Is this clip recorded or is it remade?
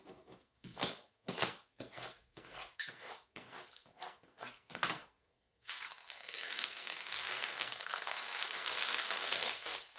remade